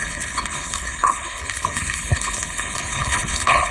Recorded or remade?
remade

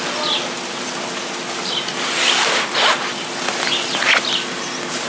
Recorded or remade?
recorded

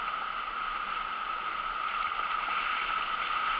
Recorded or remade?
recorded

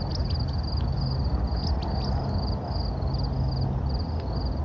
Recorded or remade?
recorded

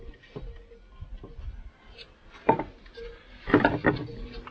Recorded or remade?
recorded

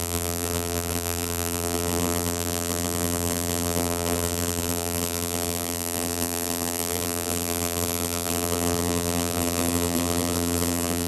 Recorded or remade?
remade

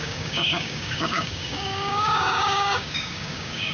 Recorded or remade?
remade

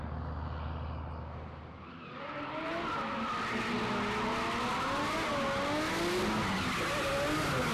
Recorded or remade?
recorded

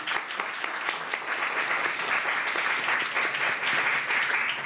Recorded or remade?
recorded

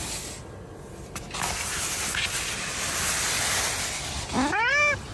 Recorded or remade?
recorded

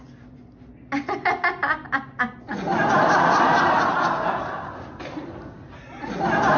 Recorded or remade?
recorded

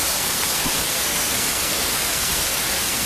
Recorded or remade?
remade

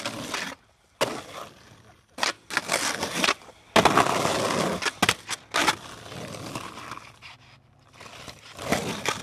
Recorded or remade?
recorded